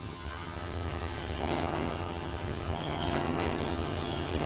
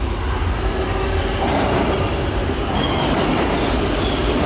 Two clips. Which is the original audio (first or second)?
second